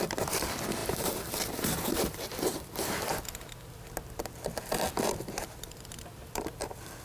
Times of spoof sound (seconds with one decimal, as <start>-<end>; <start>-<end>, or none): 0.0-3.1; 5.5-7.0